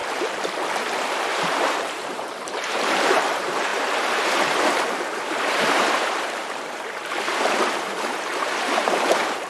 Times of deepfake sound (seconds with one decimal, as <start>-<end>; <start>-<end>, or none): 1.2-9.5